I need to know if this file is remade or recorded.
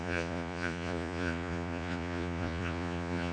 remade